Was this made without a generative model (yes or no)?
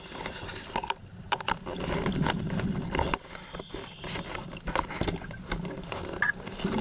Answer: yes